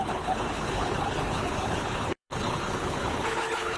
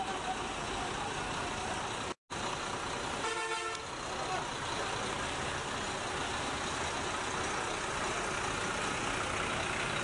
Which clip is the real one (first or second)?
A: second